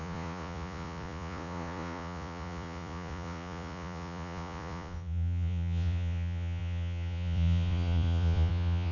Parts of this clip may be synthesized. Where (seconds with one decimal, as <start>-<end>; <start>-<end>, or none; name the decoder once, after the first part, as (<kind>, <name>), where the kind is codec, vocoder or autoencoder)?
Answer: 0.0-8.9 (vocoder, Vocos)